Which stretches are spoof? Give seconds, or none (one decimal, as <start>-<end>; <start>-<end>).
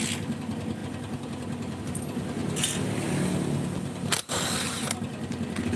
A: none